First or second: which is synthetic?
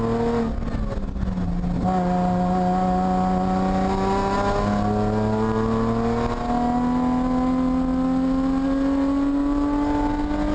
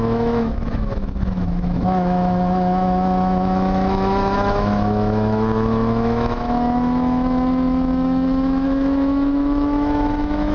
second